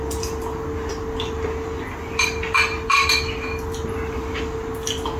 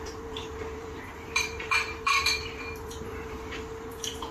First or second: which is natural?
first